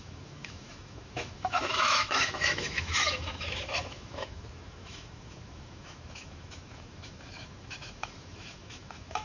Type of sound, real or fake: fake